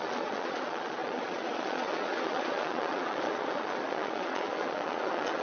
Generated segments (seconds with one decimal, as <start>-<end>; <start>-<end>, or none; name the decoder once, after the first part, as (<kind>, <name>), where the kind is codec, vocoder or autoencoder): 0.0-5.4 (vocoder, Vocos)